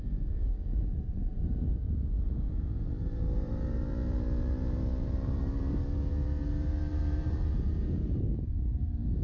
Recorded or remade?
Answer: remade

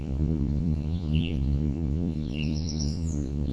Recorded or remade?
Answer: remade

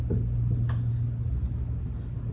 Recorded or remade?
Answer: recorded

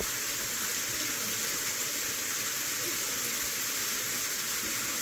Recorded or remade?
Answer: recorded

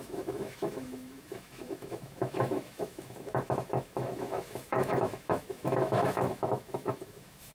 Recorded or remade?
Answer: remade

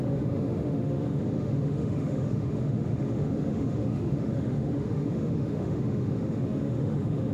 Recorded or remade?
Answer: remade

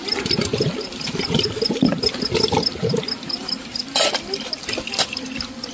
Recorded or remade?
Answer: remade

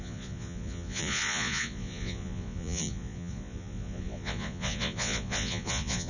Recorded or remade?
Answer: remade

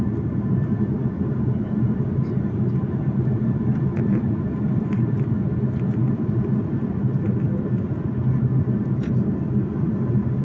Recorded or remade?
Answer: recorded